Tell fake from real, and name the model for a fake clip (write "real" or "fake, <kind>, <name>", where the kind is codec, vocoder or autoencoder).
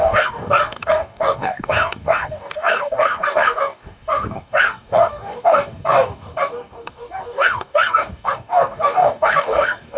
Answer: fake, codec, DAC